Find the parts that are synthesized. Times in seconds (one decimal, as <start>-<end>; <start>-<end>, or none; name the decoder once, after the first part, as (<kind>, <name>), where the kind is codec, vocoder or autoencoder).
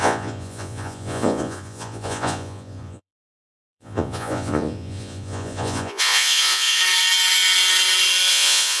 0.0-6.8 (vocoder, Vocos); 8.3-8.8